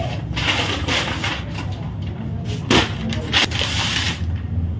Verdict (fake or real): real